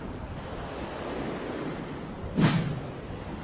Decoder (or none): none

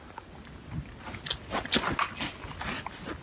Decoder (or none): none